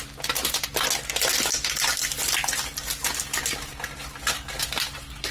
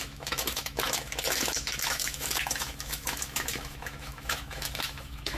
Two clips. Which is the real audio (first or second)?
first